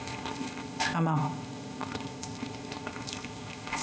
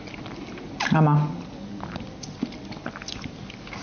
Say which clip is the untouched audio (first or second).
second